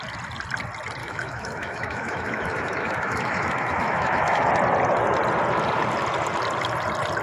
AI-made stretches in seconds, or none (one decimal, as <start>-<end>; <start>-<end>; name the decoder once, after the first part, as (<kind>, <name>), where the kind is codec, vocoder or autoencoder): 1.0-4.5 (autoencoder, DAC-VAE)